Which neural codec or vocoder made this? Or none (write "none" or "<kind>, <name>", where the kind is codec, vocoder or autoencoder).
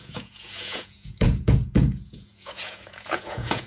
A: vocoder, Vocos